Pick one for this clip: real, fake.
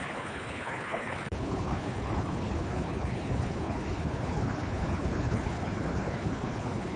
fake